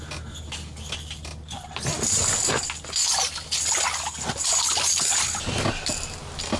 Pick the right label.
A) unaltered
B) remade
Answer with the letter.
A